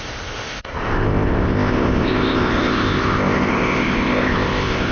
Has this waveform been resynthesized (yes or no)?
yes